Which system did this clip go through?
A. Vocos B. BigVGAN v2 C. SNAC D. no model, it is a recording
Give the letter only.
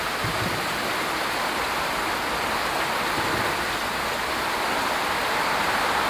D